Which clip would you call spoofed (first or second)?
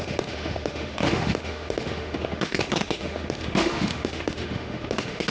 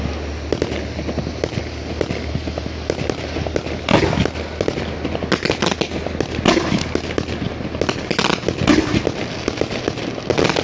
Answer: first